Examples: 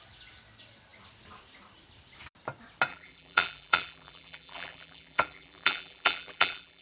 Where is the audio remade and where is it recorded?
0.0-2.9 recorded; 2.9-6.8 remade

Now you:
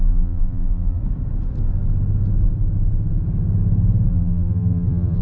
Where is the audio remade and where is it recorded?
0.0-1.0 remade; 1.0-4.1 recorded; 4.1-5.2 remade

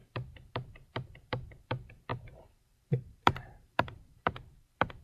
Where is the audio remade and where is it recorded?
0.0-5.0 remade